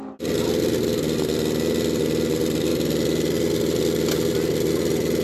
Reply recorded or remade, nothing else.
recorded